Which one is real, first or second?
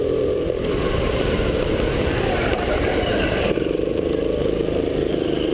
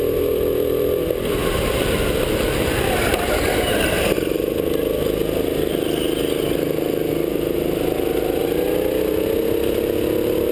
second